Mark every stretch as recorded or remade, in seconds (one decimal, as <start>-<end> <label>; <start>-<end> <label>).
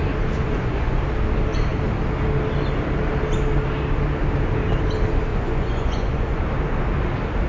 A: 0.0-0.4 recorded; 0.4-1.0 remade; 1.0-5.3 recorded; 5.3-6.4 remade; 6.4-7.5 recorded